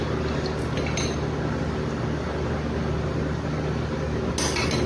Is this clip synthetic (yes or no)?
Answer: no